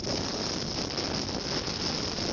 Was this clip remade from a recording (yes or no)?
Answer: no